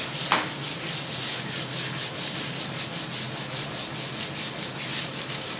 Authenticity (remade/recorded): recorded